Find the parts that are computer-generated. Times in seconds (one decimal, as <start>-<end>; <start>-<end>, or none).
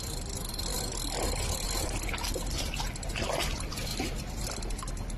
0.0-0.7; 2.3-3.9; 4.4-5.2